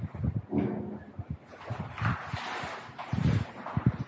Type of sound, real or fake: real